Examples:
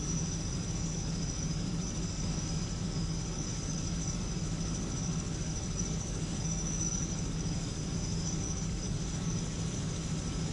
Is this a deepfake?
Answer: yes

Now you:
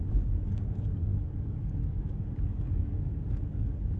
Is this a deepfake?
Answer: yes